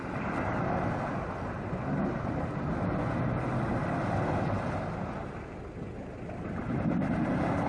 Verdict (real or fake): real